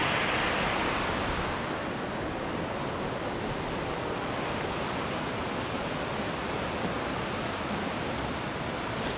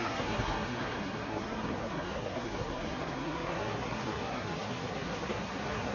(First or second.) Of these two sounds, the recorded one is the first